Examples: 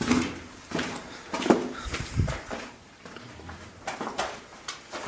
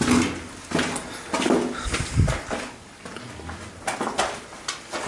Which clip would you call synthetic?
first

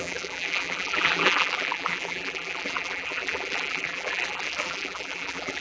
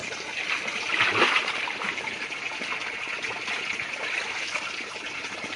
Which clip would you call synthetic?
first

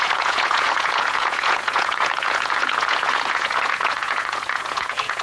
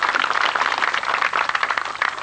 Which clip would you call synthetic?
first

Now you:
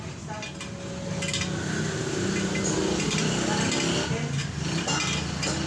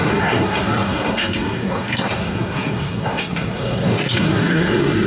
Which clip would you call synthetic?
second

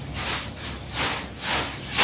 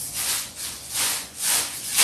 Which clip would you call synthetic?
second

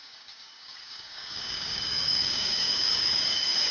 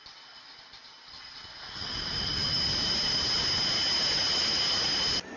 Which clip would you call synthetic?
first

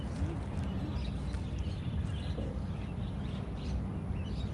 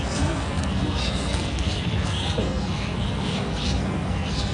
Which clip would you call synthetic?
second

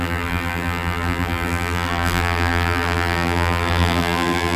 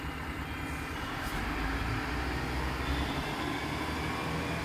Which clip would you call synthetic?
first